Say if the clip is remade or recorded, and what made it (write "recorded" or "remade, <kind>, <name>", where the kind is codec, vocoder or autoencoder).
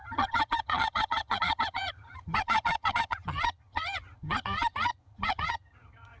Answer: remade, vocoder, HiFi-GAN